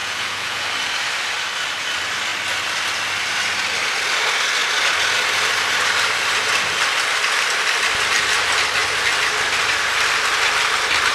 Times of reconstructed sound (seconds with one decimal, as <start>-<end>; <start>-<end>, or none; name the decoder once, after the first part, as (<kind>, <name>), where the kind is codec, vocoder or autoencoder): 0.0-0.6 (vocoder, Vocos)